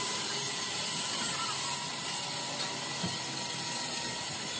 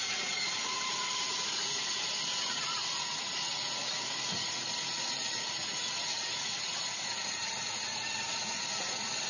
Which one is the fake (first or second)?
second